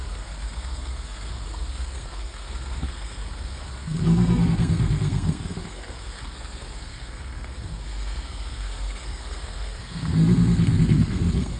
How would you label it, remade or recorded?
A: remade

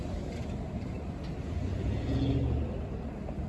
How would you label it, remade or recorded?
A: recorded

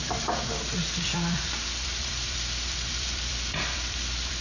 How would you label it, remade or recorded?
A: remade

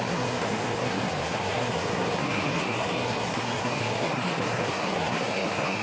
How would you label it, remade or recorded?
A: remade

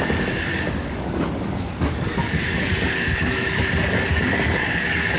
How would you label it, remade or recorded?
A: remade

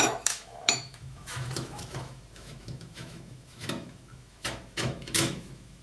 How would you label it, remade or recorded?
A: remade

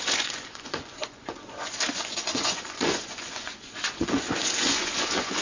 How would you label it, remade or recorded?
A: remade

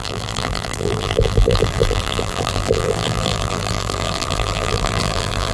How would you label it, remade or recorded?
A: remade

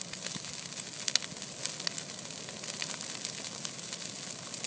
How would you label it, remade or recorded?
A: recorded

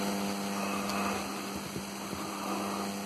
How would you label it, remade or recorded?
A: recorded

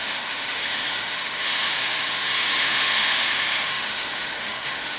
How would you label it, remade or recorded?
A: remade